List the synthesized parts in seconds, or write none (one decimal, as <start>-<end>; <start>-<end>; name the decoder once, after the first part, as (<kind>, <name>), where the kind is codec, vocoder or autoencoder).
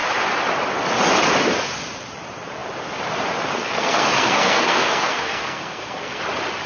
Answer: 3.6-6.2 (codec, SNAC)